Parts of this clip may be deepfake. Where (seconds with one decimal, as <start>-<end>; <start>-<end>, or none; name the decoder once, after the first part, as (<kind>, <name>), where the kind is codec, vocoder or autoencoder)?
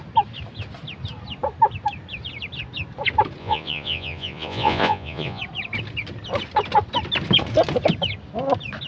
3.4-5.4 (vocoder, Vocos)